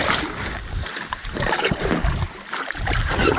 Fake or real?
real